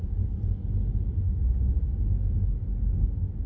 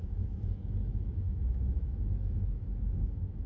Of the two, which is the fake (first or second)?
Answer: second